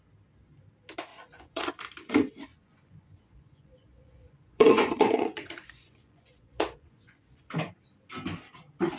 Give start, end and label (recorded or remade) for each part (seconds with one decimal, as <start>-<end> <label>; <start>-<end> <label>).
0.0-1.1 recorded; 1.1-1.7 remade; 1.7-2.5 recorded; 2.5-7.4 remade; 7.4-9.0 recorded